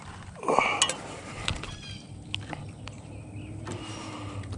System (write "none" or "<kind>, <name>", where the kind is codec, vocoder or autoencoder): none